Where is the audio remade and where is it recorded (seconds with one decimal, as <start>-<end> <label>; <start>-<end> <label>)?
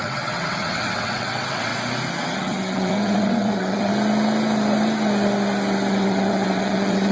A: 0.0-1.7 remade; 1.7-2.2 recorded; 2.2-3.9 remade; 3.9-5.9 recorded; 5.9-7.1 remade